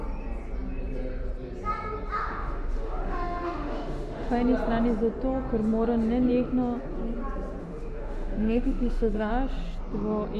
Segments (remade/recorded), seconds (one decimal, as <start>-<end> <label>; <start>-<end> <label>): 0.0-2.2 recorded; 2.2-4.3 remade; 4.3-7.6 recorded; 7.6-9.3 remade; 9.3-10.4 recorded